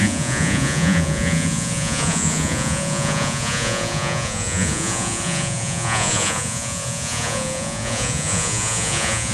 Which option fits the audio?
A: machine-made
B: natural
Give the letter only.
A